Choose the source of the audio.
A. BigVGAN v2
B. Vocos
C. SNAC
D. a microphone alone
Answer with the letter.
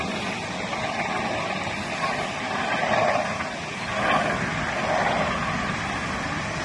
D